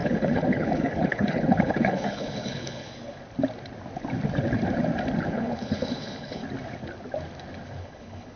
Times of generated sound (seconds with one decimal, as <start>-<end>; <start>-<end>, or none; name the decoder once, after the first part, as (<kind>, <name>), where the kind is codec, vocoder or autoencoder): 0.0-2.9 (codec, HILCodec); 5.3-6.4; 7.8-8.4